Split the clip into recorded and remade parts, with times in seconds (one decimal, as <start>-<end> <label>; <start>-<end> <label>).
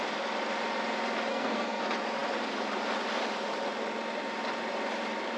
0.0-1.3 recorded; 1.3-1.8 remade; 1.8-5.4 recorded